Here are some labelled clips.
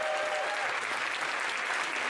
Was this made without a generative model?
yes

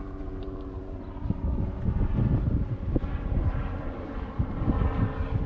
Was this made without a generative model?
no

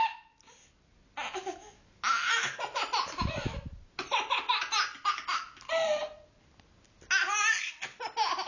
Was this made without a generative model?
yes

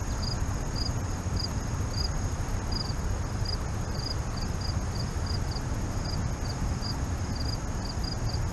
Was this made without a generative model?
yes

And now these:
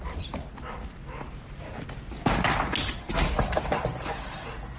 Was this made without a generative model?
yes